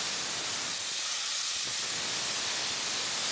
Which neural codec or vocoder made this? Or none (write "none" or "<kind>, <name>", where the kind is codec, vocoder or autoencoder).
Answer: none